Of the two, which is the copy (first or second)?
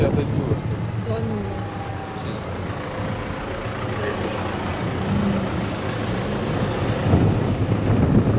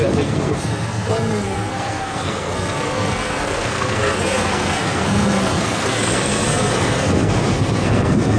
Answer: second